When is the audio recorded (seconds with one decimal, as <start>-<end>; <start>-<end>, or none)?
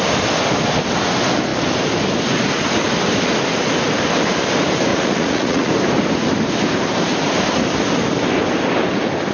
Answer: 0.0-4.9; 5.7-9.3